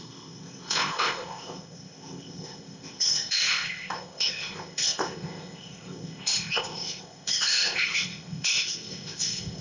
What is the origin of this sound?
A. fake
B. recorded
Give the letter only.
A